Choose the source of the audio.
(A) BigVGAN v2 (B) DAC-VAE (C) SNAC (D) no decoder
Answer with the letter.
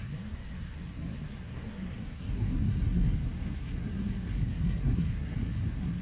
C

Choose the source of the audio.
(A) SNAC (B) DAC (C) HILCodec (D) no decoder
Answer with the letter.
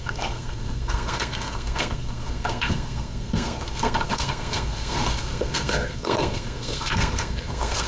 A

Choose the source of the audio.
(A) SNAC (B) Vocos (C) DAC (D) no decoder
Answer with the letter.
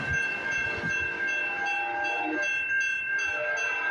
D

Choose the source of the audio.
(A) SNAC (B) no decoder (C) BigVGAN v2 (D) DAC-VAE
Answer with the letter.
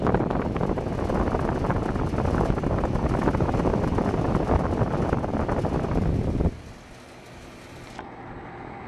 B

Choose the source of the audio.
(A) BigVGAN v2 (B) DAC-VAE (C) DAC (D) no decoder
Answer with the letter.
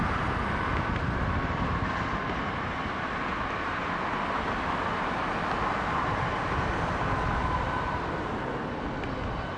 D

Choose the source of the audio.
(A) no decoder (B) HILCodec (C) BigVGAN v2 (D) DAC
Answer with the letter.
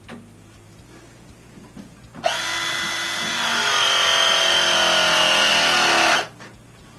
A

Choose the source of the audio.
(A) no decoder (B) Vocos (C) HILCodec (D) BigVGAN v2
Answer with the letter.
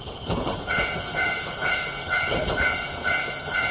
C